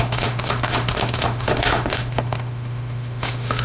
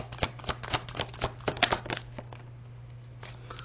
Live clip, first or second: second